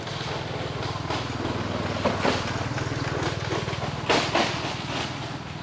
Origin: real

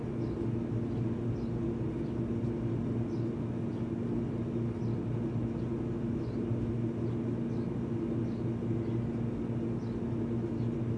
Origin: real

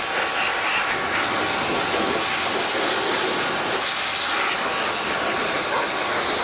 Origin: real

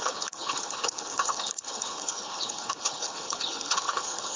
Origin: fake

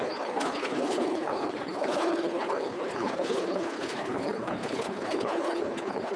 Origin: fake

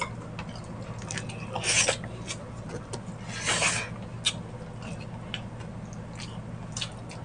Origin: real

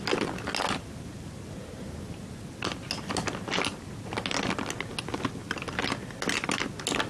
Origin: real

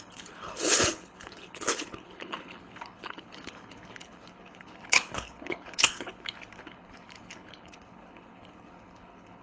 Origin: fake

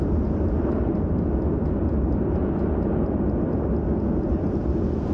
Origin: real